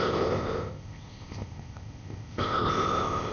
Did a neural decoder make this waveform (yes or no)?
yes